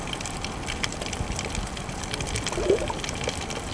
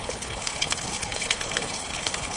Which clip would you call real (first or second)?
first